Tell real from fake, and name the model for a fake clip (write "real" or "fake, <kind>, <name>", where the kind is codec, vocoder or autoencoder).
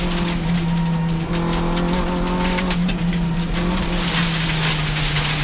real